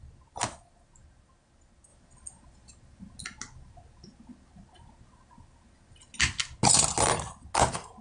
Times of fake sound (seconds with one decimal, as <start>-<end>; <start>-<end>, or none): none